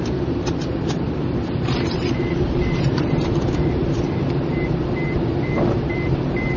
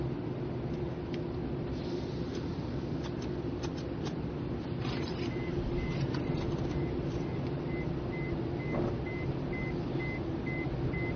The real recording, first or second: second